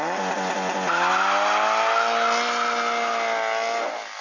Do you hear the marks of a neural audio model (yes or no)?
no